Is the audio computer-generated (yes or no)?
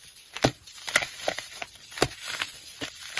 no